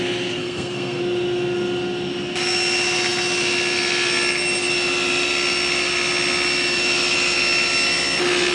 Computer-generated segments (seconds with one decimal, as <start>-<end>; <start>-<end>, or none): 0.4-1.0